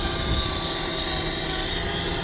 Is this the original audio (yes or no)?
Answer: yes